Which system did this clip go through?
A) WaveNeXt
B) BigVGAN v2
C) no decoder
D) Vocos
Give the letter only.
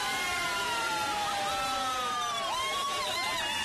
B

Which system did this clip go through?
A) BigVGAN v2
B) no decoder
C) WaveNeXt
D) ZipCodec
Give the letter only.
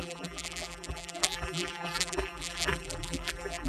A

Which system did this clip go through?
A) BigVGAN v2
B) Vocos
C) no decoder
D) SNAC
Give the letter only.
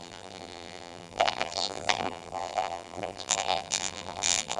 A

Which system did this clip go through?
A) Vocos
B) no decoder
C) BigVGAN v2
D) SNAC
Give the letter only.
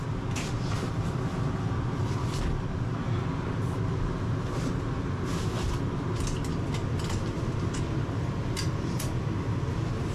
B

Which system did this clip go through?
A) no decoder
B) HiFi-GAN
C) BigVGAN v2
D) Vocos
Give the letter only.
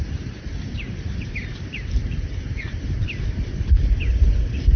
C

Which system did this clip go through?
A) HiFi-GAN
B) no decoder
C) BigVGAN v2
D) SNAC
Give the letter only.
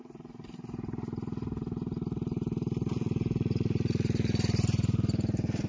C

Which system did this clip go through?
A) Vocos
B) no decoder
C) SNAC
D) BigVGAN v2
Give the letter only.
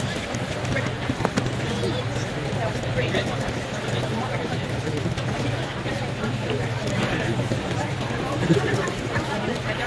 B